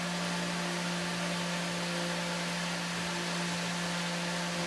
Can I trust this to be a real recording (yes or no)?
yes